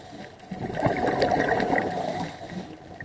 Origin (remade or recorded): recorded